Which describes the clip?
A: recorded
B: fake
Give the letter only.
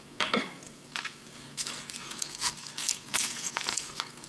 B